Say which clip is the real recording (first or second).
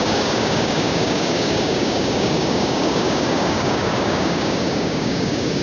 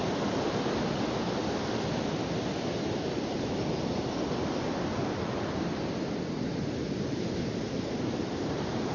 second